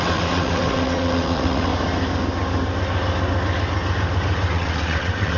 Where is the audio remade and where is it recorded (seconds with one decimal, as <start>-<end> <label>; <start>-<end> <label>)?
0.0-1.7 remade; 1.7-4.5 recorded; 4.5-5.4 remade